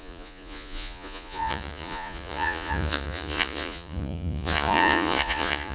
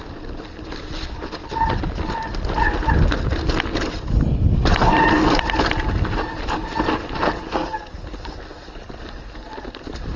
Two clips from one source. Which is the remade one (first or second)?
first